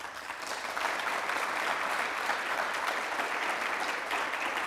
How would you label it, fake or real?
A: fake